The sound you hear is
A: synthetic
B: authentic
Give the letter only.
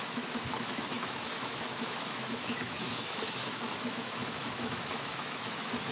A